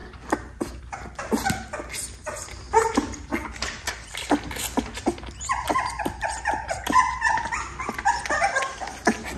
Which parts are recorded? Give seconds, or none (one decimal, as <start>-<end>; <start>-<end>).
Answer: 0.0-9.4